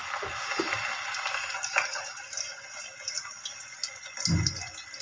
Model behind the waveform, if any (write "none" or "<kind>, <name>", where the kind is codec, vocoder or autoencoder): none